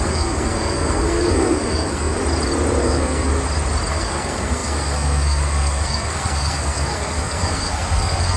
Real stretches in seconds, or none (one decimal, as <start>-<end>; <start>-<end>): 2.2-2.8; 3.3-3.9